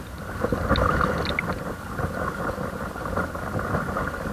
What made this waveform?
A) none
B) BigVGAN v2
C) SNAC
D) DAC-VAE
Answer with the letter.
A